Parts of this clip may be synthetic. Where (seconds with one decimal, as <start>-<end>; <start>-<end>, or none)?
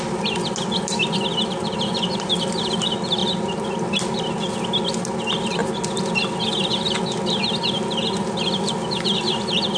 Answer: none